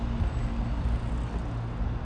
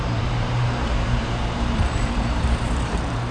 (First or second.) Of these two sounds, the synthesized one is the second